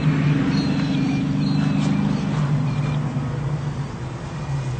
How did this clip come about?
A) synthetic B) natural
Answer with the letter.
B